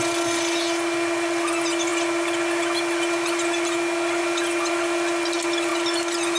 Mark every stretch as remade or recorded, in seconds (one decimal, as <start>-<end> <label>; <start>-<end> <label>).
0.0-6.4 recorded